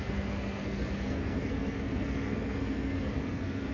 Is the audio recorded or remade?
remade